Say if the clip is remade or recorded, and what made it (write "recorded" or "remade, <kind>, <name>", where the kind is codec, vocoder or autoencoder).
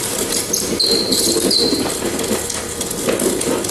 recorded